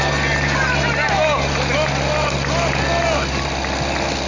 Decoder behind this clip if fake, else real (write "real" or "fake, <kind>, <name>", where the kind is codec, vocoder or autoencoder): real